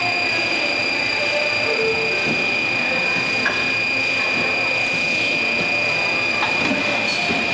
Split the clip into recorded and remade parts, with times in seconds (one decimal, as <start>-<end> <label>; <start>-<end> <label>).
0.0-0.5 recorded; 0.5-1.8 remade; 1.8-6.3 recorded; 6.3-7.5 remade